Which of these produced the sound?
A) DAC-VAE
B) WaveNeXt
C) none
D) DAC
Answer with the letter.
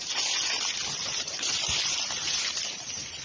C